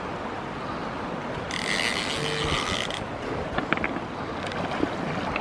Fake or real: real